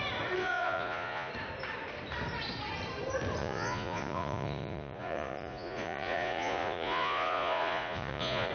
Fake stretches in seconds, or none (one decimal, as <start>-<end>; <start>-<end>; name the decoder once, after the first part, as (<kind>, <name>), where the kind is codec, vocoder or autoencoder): 0.4-1.3 (vocoder, Vocos); 3.4-8.5